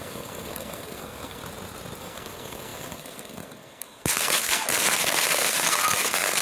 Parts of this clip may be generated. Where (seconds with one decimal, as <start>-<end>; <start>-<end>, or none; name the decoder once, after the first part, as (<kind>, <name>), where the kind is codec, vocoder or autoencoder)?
0.0-1.4 (codec, SNAC); 2.0-6.4